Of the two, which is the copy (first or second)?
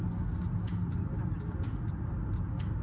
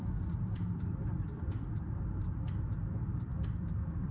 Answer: second